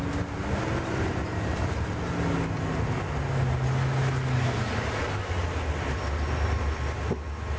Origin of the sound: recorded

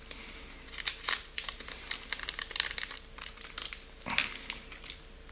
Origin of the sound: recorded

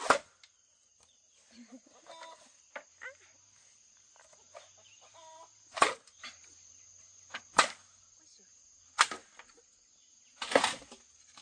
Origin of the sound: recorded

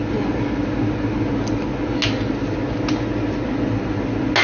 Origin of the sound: recorded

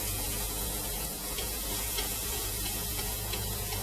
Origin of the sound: remade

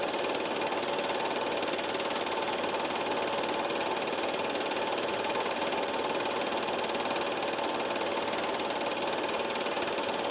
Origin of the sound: recorded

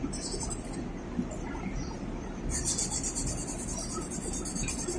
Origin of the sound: recorded